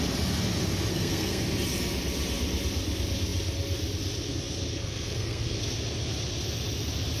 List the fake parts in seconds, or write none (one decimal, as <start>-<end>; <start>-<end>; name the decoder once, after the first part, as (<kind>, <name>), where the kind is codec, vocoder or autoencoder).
0.9-1.4 (codec, SNAC); 4.7-5.6